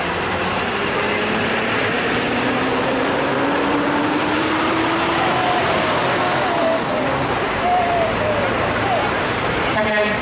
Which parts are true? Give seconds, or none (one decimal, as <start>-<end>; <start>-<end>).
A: 6.0-6.9

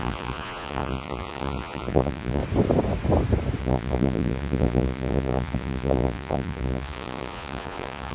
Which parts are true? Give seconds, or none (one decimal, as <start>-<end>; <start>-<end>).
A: 2.4-3.6

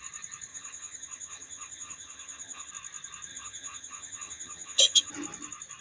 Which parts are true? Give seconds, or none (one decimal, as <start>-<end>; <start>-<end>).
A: 0.0-0.5; 2.7-3.3; 5.1-5.8

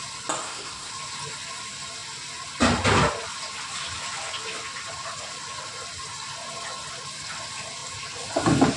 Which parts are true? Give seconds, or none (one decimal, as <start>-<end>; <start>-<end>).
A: 0.0-0.4; 0.9-8.8

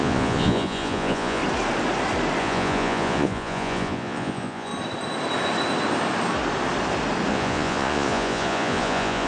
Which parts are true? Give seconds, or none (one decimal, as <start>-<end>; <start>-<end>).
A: 1.4-2.4; 4.7-7.3

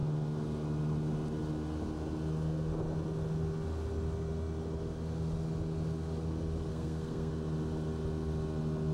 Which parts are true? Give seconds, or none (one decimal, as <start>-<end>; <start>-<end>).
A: 0.0-6.7; 7.3-8.9

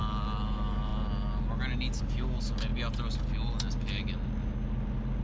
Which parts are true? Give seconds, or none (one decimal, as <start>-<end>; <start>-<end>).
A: 0.0-5.2